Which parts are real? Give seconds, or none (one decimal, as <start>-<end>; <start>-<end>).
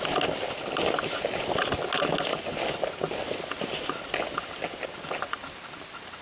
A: 0.0-6.2